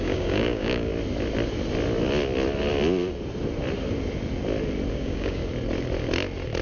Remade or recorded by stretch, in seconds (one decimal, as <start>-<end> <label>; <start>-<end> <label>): 0.0-0.9 remade; 0.9-4.9 recorded; 4.9-5.4 remade; 5.4-6.6 recorded